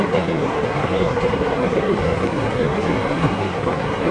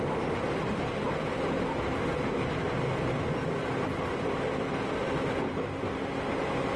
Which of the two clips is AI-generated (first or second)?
first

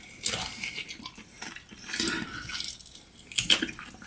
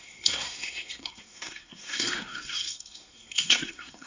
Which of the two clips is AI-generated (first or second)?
second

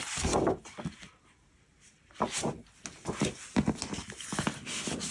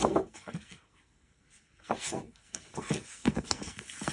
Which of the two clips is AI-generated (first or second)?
second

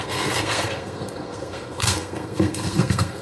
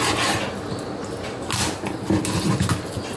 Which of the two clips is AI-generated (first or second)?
first